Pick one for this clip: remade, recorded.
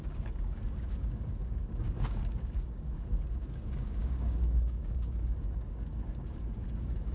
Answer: remade